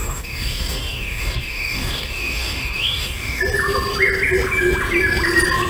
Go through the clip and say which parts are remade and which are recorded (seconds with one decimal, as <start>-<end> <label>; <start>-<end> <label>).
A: 0.0-3.4 remade; 3.4-5.7 recorded